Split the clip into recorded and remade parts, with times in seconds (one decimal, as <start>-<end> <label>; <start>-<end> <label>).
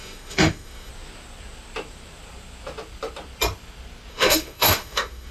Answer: 0.0-0.9 remade; 0.9-4.1 recorded; 4.1-5.3 remade